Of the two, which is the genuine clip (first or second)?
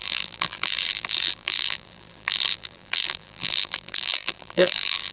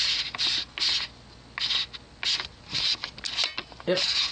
second